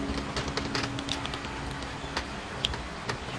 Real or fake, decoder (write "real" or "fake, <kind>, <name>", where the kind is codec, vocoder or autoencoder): real